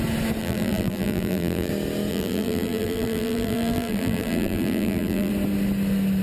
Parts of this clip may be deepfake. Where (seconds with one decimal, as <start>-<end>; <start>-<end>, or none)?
0.4-1.7; 2.1-5.3

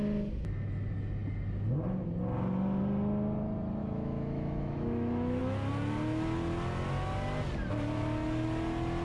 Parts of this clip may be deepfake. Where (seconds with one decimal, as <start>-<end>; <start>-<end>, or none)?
3.8-5.4

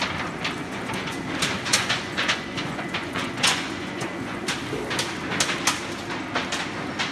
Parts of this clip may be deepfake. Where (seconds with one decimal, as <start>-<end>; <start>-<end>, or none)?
0.6-1.2; 1.7-4.4

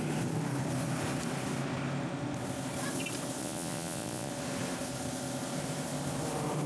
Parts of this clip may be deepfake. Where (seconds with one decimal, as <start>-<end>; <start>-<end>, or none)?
3.4-4.3